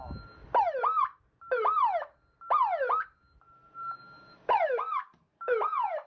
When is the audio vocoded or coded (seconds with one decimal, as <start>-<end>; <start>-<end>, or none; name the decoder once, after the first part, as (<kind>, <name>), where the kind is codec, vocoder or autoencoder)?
none